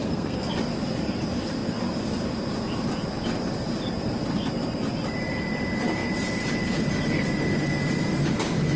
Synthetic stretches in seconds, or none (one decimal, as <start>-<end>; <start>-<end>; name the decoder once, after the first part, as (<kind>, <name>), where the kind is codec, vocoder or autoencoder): 0.0-0.5 (codec, SNAC)